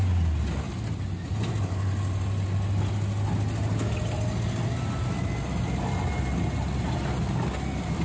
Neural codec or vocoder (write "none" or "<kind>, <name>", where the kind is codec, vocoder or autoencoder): none